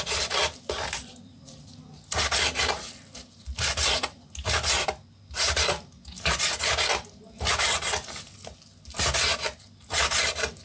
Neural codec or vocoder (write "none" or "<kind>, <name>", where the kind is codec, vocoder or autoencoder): none